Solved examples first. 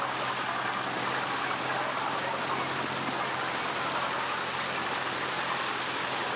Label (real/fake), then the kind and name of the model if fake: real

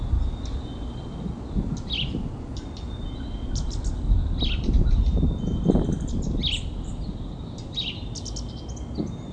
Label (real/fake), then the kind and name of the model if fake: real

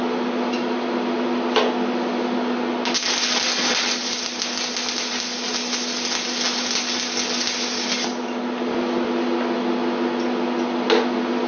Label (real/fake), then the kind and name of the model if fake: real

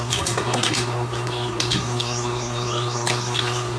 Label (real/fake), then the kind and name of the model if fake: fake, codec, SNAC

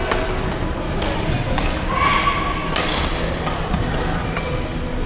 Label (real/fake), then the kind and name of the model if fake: real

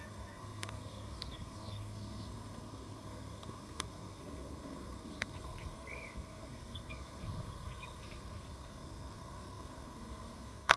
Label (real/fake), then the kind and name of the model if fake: fake, codec, SNAC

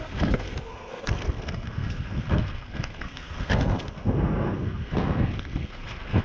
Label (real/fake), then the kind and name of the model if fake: fake, codec, SNAC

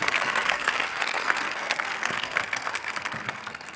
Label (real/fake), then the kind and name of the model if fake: fake, codec, SNAC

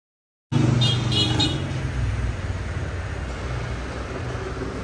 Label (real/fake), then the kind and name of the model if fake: real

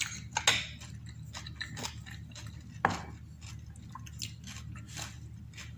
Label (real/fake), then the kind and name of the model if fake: real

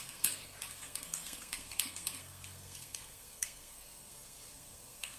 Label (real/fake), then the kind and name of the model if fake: fake, codec, SNAC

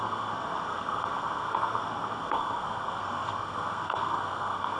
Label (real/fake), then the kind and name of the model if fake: fake, codec, SNAC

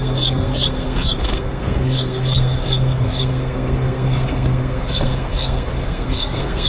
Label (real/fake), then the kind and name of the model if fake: fake, codec, SNAC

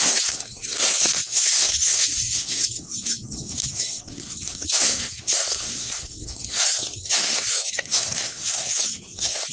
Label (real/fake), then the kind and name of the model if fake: fake, codec, SNAC